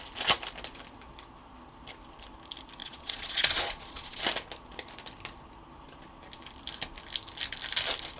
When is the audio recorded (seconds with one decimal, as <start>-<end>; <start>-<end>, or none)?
0.0-2.8; 4.2-8.2

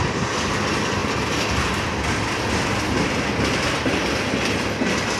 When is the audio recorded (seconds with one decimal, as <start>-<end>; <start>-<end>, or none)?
0.0-5.2